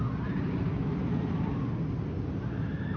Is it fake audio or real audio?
real